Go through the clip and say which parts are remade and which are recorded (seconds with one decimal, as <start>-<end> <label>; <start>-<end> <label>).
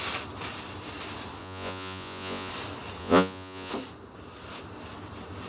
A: 0.0-1.4 recorded; 1.4-2.5 remade; 2.5-3.0 recorded; 3.0-3.7 remade; 3.7-5.5 recorded